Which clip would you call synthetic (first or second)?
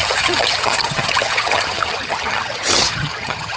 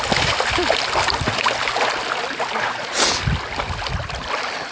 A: first